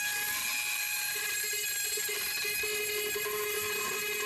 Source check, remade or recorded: recorded